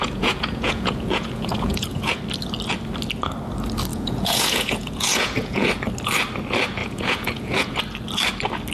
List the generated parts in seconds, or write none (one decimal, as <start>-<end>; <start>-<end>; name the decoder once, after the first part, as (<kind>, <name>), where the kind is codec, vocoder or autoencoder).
0.0-2.2 (vocoder, Vocos); 3.9-5.7; 6.8-7.8